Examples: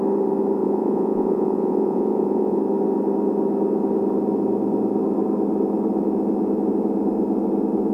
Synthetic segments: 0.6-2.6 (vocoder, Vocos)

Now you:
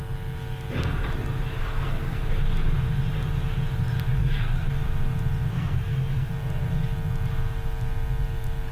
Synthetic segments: 1.6-2.2 (codec, SNAC); 4.2-4.7; 5.5-6.3

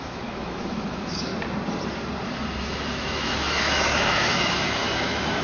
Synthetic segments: 0.0-1.3 (autoencoder, DAC-VAE); 2.6-5.4

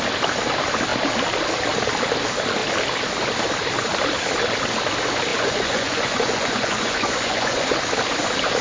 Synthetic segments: 5.3-7.7 (vocoder, Vocos)

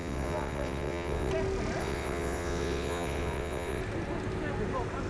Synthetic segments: 0.0-1.3 (vocoder, WaveNeXt); 1.8-3.8